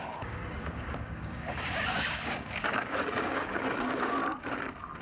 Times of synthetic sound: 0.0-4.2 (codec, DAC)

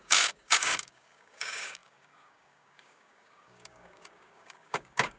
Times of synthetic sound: 0.0-5.2 (codec, DAC)

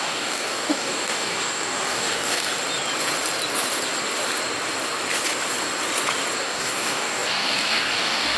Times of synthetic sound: 0.0-2.5 (codec, DAC); 6.4-8.4

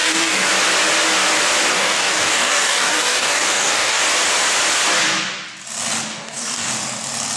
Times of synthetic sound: 0.0-0.5 (codec, DAC); 1.7-4.0; 6.1-6.7

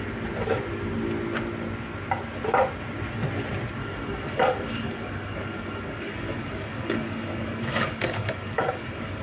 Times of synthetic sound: 3.8-9.2 (codec, DAC)

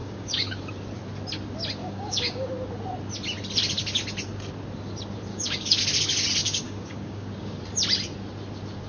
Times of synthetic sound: 0.0-0.6 (codec, DAC); 1.8-2.5; 5.3-5.8; 6.4-7.6

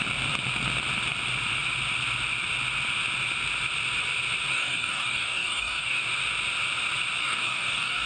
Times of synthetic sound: 4.5-6.0 (codec, DAC); 7.2-8.1

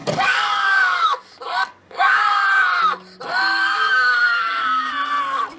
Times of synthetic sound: 0.0-2.3 (codec, DAC); 3.5-4.9